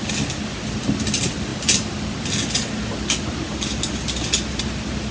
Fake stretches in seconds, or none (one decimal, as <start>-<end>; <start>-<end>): none